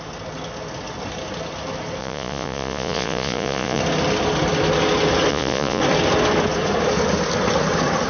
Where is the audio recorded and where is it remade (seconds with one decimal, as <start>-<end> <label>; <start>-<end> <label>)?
0.0-2.0 recorded; 2.0-3.8 remade; 3.8-5.3 recorded; 5.3-5.8 remade; 5.8-8.1 recorded